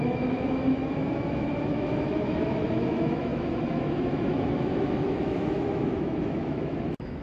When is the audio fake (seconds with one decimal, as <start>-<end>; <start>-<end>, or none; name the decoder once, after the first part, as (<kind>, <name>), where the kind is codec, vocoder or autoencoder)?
0.0-7.2 (autoencoder, DAC-VAE)